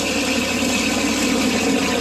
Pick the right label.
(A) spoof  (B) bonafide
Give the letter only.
B